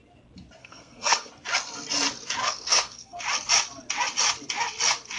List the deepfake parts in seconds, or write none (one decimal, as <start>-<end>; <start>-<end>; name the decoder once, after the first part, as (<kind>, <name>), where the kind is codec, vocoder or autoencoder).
0.6-1.3 (codec, SNAC); 2.4-3.2